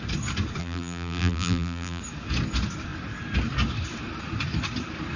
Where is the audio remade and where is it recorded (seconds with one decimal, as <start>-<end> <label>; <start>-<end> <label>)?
0.0-0.6 recorded; 0.6-2.0 remade; 2.0-5.2 recorded